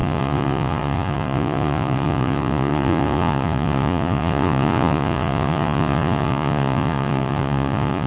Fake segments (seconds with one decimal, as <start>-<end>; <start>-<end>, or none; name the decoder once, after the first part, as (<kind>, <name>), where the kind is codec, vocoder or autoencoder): 0.0-8.1 (vocoder, Vocos)